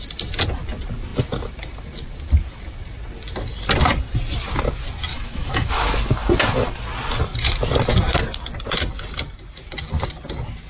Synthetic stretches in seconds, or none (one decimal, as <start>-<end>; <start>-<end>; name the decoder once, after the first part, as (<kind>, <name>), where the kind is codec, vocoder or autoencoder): 5.1-5.7 (autoencoder, DAC-VAE)